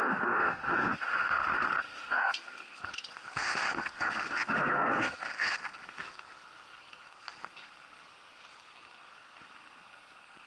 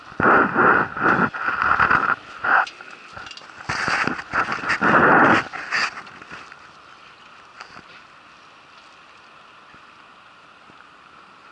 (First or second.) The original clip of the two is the second